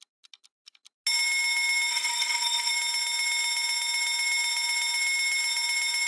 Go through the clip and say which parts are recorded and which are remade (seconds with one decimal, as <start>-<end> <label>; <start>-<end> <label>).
0.0-1.9 recorded; 1.9-2.7 remade; 2.7-6.1 recorded